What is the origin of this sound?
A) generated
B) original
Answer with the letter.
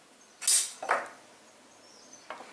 B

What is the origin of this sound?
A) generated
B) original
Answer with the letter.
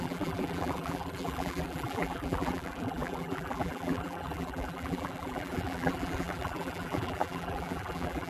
A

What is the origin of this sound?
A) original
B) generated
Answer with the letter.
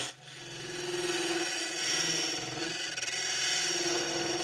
A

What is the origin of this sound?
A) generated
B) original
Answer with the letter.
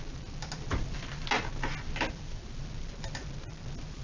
B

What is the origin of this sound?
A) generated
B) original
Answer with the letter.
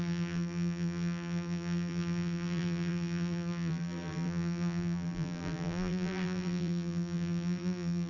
A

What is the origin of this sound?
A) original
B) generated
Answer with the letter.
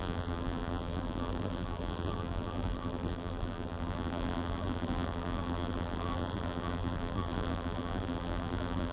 B